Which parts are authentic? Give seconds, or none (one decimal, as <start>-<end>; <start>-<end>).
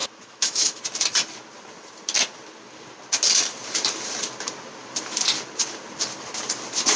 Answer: 0.8-7.0